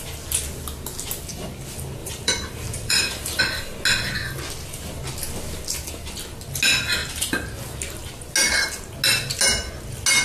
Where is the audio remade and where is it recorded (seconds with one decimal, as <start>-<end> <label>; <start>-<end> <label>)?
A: 0.0-2.0 recorded; 2.0-3.4 remade; 3.4-7.0 recorded; 7.0-7.6 remade; 7.6-10.2 recorded

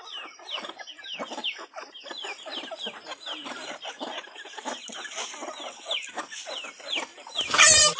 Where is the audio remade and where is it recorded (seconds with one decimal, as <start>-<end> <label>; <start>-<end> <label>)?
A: 0.0-1.4 remade; 1.4-6.1 recorded; 6.1-8.0 remade

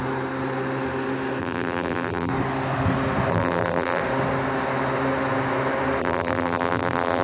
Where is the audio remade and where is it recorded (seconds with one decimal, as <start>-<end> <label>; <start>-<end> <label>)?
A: 0.0-1.4 recorded; 1.4-2.3 remade; 2.3-3.3 recorded; 3.3-4.0 remade; 4.0-6.0 recorded; 6.0-7.2 remade

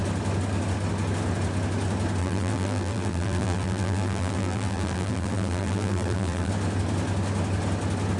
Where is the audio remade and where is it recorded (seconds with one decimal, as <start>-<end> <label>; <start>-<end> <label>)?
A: 0.0-2.2 recorded; 2.2-6.5 remade; 6.5-8.2 recorded

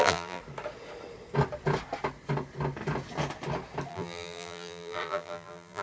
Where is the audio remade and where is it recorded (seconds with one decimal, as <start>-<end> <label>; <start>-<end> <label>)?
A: 0.0-0.4 remade; 0.4-3.9 recorded; 3.9-5.8 remade

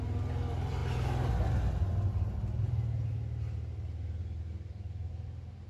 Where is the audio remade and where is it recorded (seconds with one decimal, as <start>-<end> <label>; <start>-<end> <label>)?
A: 0.0-5.7 recorded

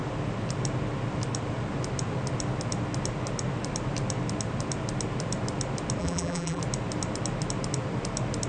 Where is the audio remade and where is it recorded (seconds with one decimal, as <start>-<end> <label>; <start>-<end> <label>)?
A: 0.0-6.0 recorded; 6.0-6.6 remade; 6.6-8.5 recorded